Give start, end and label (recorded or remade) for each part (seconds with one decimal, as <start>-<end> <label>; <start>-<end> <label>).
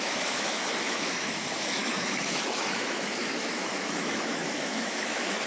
0.0-5.5 remade